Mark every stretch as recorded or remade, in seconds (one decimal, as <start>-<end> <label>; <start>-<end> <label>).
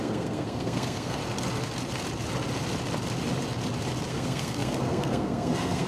0.0-1.2 remade; 1.2-4.1 recorded; 4.1-5.9 remade